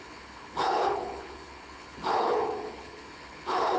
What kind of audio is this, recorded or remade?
remade